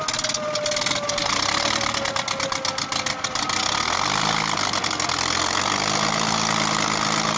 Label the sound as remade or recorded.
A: recorded